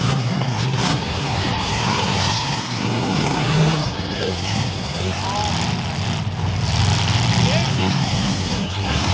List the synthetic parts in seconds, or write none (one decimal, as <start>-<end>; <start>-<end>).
0.0-5.2; 7.7-9.1